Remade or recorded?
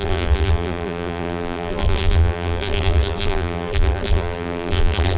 remade